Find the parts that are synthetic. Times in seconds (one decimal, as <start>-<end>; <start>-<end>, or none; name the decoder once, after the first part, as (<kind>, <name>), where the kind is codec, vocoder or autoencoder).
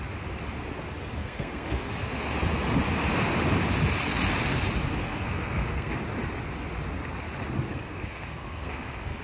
1.2-1.9 (codec, SNAC); 5.0-6.0; 7.7-9.2